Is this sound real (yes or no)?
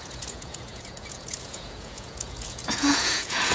no